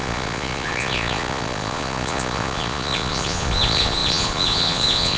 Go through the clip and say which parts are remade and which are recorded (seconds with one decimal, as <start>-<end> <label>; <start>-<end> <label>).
0.0-5.2 remade